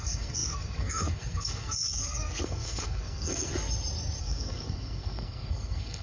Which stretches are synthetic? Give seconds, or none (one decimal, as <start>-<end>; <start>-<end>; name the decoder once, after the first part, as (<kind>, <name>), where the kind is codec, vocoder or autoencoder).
0.0-3.5 (codec, SNAC); 4.2-6.0